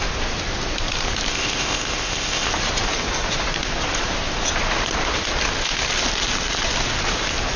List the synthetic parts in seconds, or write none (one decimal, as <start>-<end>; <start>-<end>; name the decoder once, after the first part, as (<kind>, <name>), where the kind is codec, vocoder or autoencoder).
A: 1.3-2.5 (codec, ZipCodec)